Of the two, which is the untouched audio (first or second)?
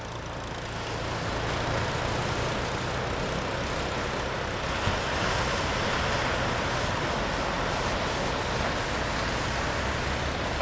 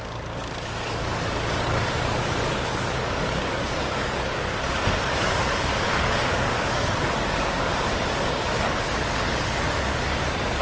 first